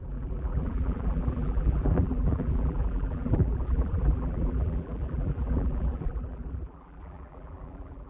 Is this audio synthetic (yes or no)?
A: yes